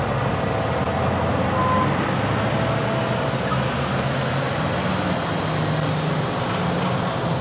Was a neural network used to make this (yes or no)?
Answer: no